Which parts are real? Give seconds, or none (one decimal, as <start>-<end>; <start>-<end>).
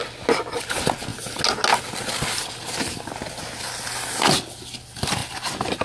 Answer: 0.0-5.2